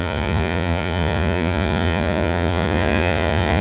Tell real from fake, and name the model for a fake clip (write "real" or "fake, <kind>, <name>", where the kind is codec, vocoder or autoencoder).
fake, vocoder, Vocos